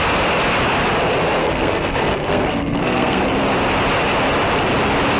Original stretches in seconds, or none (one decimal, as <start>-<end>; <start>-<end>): 0.0-1.4; 3.2-5.2